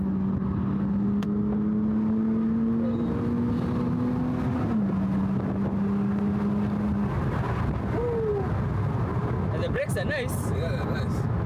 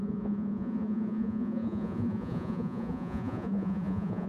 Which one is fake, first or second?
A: second